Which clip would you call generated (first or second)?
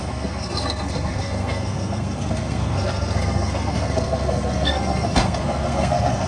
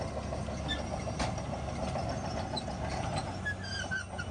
first